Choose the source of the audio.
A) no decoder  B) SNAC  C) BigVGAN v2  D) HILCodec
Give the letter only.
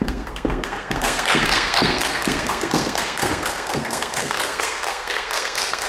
B